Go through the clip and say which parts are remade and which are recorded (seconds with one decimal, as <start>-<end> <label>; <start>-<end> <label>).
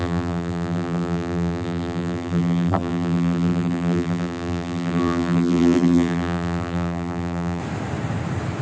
0.0-7.6 remade; 7.6-8.6 recorded